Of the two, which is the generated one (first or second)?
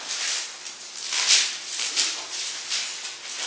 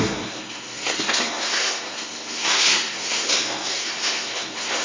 second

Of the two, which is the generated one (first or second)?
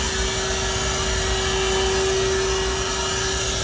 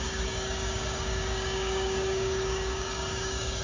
second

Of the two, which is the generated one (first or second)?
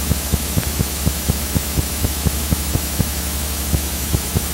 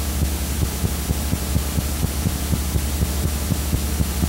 first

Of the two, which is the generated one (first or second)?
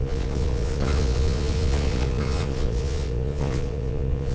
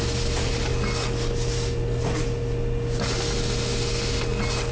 first